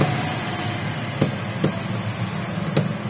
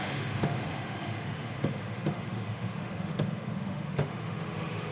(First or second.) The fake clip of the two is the second